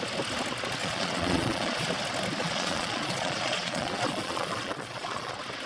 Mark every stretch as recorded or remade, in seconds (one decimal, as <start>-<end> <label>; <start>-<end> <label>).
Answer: 0.0-0.8 recorded; 0.8-1.9 remade; 1.9-2.4 recorded; 2.4-5.3 remade; 5.3-5.7 recorded